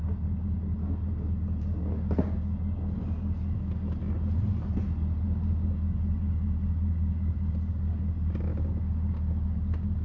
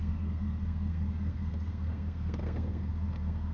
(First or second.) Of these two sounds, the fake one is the second